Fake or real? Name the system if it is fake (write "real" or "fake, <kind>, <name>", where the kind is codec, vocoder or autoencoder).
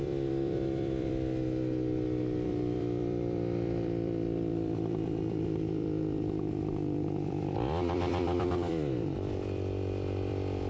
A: fake, vocoder, BigVGAN v2